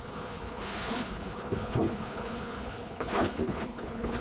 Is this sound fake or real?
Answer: fake